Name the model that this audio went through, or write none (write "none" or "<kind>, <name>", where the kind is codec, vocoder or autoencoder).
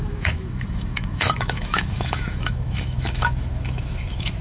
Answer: autoencoder, DAC-VAE